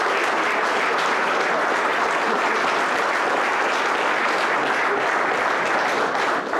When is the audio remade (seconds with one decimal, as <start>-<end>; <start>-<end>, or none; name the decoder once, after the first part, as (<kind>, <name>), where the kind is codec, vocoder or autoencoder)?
none